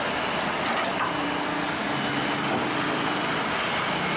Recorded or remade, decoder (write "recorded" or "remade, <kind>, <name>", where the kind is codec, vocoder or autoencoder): recorded